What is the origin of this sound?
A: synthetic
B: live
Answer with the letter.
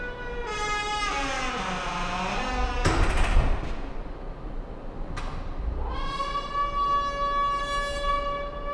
B